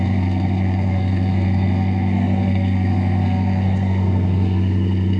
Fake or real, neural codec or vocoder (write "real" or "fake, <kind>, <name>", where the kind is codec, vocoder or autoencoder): fake, codec, SNAC